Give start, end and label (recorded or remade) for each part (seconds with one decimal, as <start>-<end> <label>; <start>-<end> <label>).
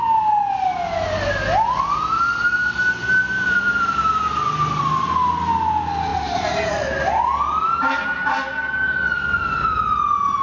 0.0-2.6 recorded; 2.6-4.8 remade; 4.8-6.1 recorded; 6.1-6.7 remade; 6.7-10.4 recorded